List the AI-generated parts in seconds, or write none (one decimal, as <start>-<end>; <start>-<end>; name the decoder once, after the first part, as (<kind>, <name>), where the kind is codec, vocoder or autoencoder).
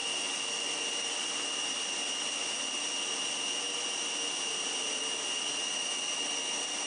none